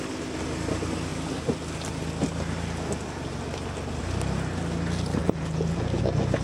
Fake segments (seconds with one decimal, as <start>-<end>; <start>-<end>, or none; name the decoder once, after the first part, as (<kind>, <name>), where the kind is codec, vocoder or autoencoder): 5.2-6.0 (vocoder, Vocos)